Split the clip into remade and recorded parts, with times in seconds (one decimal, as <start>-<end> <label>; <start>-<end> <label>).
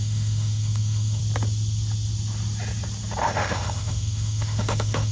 0.0-1.2 remade; 1.2-3.2 recorded; 3.2-5.1 remade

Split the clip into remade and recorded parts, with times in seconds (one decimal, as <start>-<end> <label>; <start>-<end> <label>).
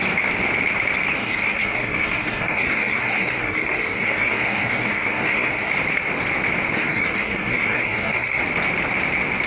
0.0-1.2 recorded; 1.2-5.7 remade; 5.7-6.7 recorded; 6.7-8.4 remade; 8.4-9.5 recorded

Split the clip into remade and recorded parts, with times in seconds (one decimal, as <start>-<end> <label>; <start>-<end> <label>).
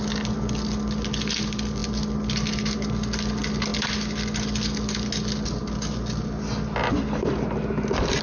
0.0-8.2 recorded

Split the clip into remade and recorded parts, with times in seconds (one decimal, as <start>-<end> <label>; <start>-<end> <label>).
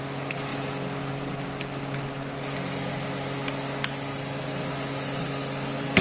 0.0-6.0 recorded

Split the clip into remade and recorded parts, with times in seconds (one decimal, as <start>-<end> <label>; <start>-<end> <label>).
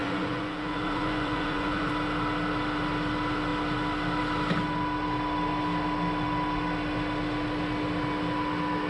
0.0-1.9 remade; 1.9-8.9 recorded